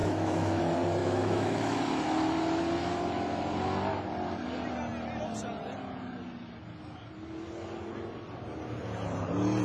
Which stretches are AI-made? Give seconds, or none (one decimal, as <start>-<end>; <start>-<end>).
0.0-0.6; 1.0-1.8